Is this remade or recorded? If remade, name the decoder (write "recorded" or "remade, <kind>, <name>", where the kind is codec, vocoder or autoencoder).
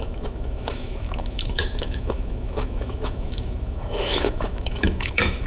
remade, autoencoder, DAC-VAE